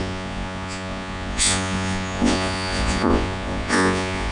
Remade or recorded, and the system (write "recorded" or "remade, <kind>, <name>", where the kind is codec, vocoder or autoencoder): remade, vocoder, Vocos